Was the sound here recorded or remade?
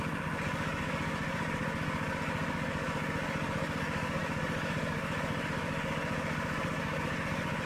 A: remade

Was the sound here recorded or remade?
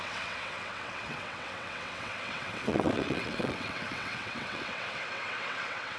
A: remade